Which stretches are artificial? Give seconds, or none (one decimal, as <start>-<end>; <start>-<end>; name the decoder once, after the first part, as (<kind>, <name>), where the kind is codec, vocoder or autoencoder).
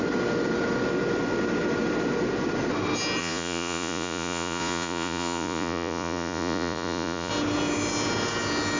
3.2-7.3 (vocoder, Vocos)